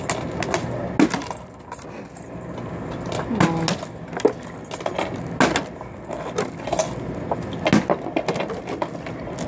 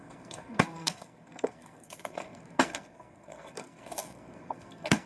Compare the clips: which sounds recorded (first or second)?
first